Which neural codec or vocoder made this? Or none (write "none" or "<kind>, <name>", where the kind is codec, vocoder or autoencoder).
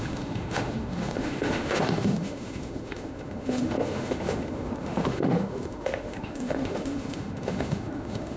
autoencoder, DAC-VAE